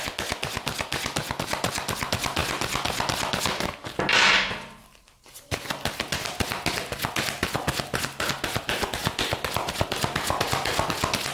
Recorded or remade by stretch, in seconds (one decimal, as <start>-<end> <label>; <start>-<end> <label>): 0.0-9.0 recorded; 9.0-9.9 remade; 9.9-11.3 recorded